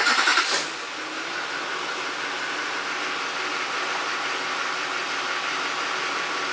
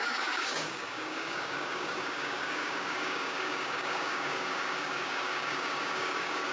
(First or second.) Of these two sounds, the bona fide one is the first